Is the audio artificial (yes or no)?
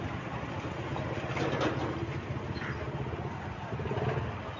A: no